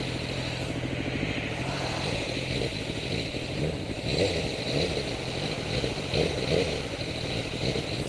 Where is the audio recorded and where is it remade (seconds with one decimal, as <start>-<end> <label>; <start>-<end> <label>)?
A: 0.0-8.1 recorded